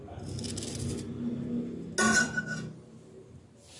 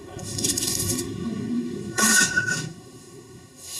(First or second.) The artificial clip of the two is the second